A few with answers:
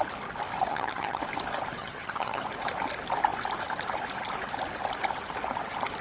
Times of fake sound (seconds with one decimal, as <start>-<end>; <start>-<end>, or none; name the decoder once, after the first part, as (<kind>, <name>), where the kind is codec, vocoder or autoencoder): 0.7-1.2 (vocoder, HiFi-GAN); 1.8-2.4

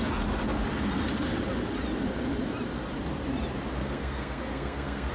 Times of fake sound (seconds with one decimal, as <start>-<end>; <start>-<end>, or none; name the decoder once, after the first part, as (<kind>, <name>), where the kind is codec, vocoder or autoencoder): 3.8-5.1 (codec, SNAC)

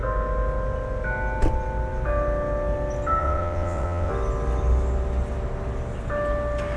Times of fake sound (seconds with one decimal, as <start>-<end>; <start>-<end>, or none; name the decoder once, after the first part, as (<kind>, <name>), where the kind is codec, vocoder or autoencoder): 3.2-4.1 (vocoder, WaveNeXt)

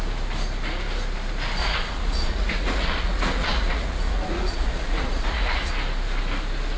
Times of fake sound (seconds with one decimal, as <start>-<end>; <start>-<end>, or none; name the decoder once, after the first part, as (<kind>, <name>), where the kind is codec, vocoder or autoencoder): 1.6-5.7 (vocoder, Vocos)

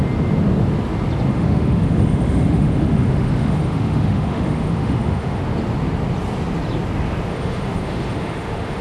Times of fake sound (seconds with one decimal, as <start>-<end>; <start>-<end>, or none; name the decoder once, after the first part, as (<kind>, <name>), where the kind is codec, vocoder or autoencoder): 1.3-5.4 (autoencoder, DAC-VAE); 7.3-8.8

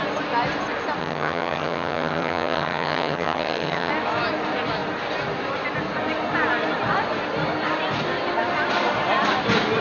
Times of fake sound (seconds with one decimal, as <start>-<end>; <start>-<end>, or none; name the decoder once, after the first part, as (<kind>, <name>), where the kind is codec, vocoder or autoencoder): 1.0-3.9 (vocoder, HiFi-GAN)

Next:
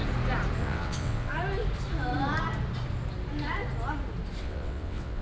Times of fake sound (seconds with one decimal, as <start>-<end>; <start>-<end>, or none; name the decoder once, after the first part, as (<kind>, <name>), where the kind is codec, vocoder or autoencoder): 0.6-1.3 (vocoder, WaveNeXt); 4.4-5.2